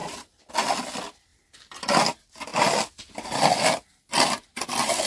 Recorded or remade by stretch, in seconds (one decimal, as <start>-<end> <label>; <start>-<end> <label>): 0.0-5.1 recorded